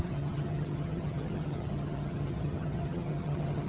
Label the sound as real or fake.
fake